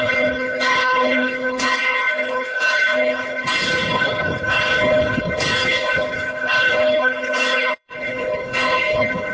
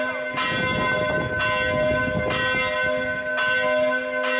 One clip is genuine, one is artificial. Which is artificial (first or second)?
first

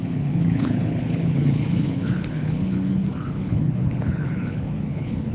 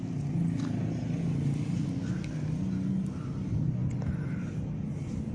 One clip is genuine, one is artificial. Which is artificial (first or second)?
first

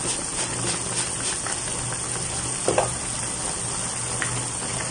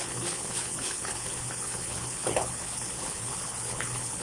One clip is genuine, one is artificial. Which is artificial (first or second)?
second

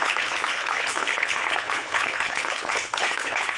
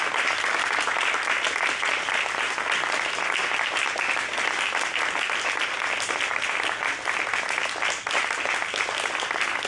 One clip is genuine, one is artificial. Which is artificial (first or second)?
first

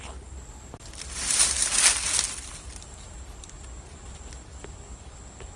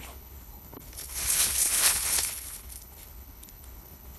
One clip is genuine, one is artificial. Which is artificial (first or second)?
second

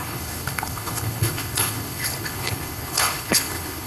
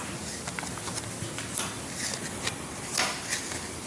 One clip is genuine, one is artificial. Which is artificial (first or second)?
first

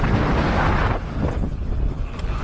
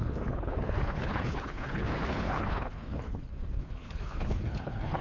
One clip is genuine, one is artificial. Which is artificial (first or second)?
second